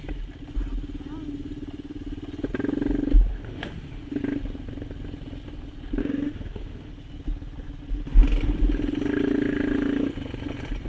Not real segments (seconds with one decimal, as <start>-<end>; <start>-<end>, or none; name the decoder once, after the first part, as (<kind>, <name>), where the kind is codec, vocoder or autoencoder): 3.3-4.1 (autoencoder, DAC-VAE); 6.0-6.9